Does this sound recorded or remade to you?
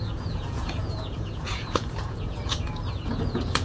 remade